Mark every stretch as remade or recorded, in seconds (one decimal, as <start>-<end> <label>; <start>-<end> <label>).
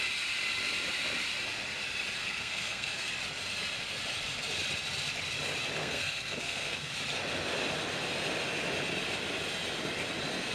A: 0.0-2.2 recorded; 2.2-3.1 remade; 3.1-5.8 recorded; 5.8-6.9 remade; 6.9-10.5 recorded